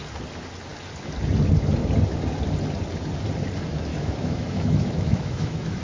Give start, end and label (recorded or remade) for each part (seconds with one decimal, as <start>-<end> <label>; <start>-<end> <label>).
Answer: 0.0-3.9 recorded; 3.9-5.8 remade